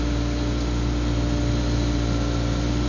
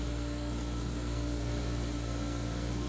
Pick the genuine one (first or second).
first